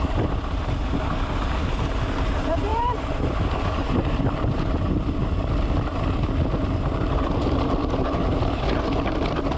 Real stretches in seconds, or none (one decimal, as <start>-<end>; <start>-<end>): 0.0-2.7; 3.2-3.8; 4.4-9.6

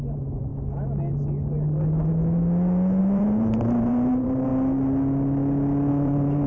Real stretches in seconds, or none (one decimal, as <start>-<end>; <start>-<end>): 0.5-3.0; 4.5-5.9

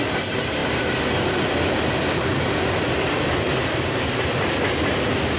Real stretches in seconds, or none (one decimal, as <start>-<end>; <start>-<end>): 0.0-5.4

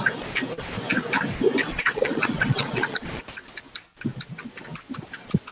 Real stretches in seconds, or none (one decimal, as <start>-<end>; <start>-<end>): 0.0-1.7; 3.2-5.5

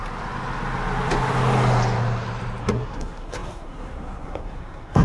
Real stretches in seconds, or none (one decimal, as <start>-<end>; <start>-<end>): 0.0-2.6

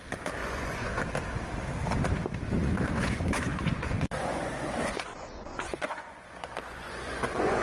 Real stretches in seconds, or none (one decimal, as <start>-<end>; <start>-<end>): 0.0-0.4; 1.0-2.6